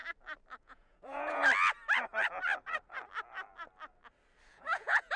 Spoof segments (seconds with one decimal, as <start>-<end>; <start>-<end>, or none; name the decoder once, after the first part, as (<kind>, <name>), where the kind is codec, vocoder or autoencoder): 0.6-1.4 (vocoder, Vocos); 4.5-5.2